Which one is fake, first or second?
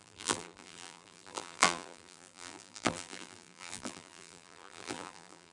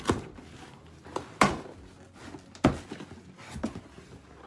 first